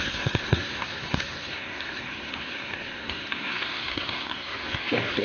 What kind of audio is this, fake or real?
fake